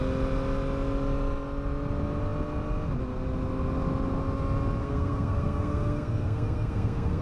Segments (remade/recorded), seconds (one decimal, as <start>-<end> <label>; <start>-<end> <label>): 0.0-4.8 recorded; 4.8-7.2 remade